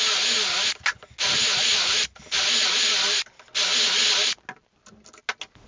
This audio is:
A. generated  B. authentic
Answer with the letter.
B